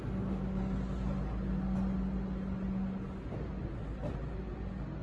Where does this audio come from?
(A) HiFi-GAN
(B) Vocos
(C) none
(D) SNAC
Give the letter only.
C